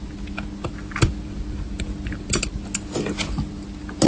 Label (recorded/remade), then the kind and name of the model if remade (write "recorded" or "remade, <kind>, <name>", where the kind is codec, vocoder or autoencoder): recorded